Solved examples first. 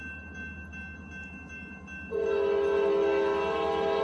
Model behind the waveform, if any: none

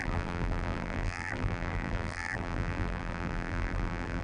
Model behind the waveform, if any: vocoder, BigVGAN v2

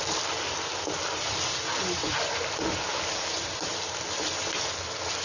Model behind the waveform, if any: none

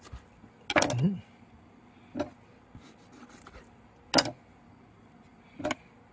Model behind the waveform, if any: none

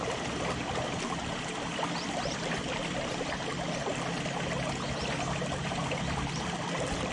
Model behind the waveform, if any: none